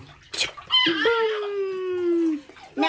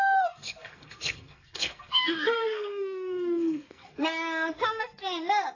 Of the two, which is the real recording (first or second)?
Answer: first